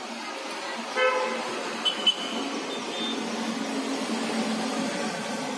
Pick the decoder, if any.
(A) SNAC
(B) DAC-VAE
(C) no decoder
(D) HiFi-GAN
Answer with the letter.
C